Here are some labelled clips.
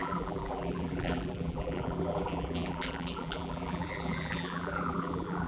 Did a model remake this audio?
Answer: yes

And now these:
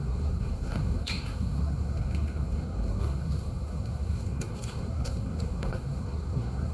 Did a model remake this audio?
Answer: yes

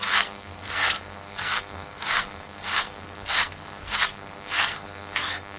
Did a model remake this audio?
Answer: yes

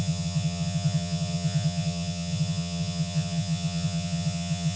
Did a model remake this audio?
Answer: yes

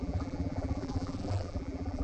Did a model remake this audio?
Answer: yes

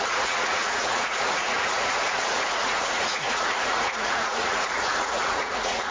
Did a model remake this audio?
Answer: yes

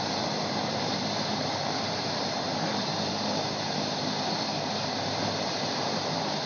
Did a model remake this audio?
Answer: yes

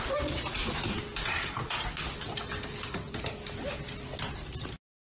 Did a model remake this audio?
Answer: no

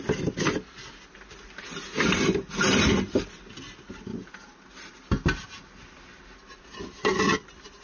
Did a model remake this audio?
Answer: no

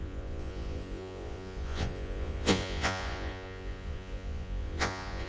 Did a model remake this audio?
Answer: yes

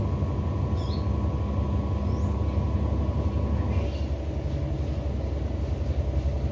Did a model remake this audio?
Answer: no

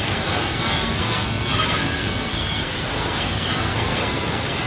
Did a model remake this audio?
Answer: yes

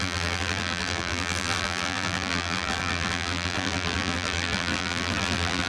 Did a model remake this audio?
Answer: yes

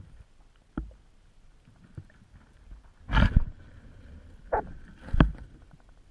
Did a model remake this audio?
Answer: no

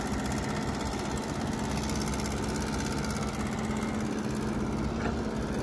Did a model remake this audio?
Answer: no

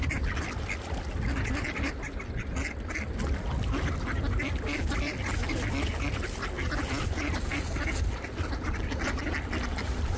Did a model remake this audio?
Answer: no